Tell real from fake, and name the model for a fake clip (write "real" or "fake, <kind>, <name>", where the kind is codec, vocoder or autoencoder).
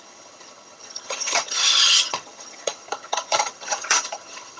fake, vocoder, HiFi-GAN